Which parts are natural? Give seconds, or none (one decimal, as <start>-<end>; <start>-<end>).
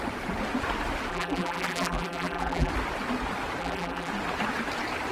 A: 0.0-1.1; 2.7-3.6; 4.1-5.1